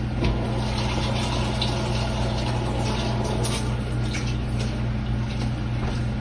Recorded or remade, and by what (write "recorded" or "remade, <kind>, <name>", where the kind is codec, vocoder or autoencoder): recorded